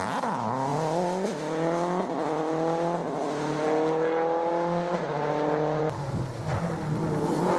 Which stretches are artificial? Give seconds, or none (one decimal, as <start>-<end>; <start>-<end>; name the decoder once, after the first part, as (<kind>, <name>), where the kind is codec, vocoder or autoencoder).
none